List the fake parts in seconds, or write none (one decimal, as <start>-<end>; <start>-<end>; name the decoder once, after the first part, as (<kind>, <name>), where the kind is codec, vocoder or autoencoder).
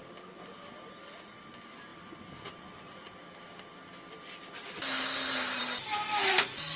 none